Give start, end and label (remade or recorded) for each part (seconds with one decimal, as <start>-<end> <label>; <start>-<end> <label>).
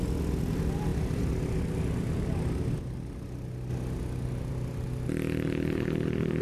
0.0-6.4 recorded